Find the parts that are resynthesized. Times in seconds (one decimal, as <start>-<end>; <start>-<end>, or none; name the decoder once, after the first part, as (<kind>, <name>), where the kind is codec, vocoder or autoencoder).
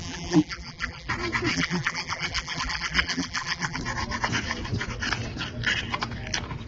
0.0-1.1 (vocoder, BigVGAN v2); 1.5-3.8